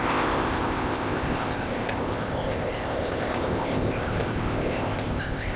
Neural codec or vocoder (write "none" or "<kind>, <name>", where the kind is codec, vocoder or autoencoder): codec, ZipCodec